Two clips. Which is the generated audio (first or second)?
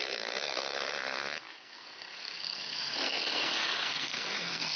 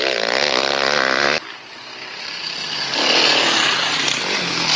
first